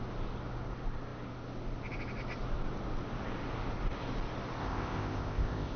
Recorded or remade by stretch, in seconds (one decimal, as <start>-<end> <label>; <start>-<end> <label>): 0.0-4.6 recorded; 4.6-5.8 remade